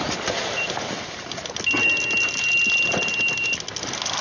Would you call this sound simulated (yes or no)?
no